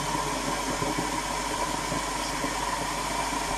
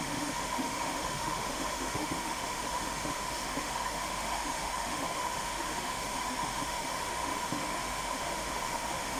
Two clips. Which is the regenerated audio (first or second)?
second